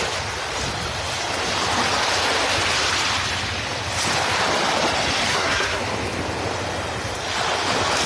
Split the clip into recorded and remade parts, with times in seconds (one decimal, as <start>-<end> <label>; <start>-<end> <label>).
0.0-5.3 recorded; 5.3-5.8 remade; 5.8-8.1 recorded